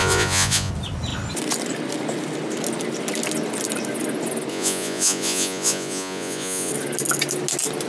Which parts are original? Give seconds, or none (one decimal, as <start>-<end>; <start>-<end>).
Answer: 0.7-4.5; 6.7-7.9